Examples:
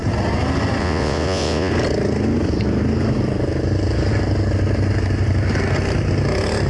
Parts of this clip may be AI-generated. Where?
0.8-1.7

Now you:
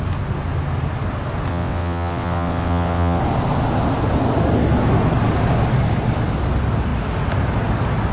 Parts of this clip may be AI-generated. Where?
1.5-3.2

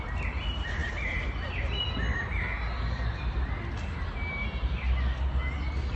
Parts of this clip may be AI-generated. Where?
none